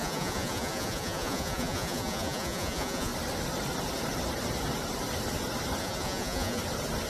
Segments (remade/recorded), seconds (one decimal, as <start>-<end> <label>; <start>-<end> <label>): 0.0-3.1 remade; 3.1-5.8 recorded; 5.8-6.6 remade; 6.6-7.1 recorded